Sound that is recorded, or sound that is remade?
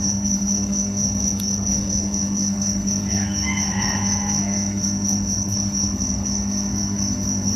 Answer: remade